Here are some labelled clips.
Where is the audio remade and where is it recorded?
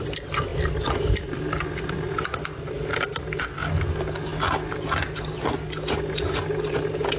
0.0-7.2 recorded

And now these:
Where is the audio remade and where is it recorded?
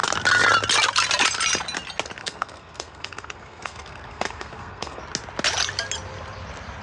0.0-2.2 recorded; 2.2-5.0 remade; 5.0-6.8 recorded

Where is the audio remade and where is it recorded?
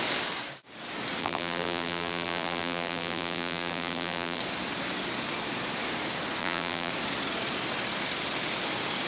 0.0-1.2 recorded; 1.2-4.4 remade; 4.4-6.4 recorded; 6.4-6.9 remade; 6.9-9.1 recorded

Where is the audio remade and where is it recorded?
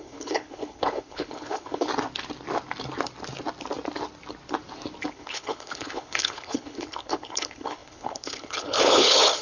0.0-1.9 remade; 1.9-5.1 recorded; 5.1-9.4 remade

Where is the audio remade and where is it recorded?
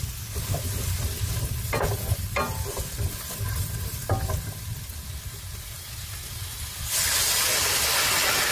0.0-8.5 recorded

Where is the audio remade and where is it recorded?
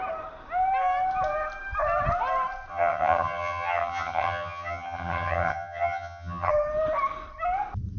0.0-2.7 recorded; 2.7-6.5 remade; 6.5-8.0 recorded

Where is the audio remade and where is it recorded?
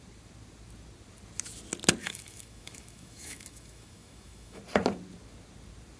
0.0-2.0 recorded; 2.0-4.6 remade; 4.6-6.0 recorded